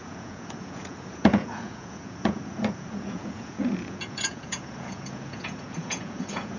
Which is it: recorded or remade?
remade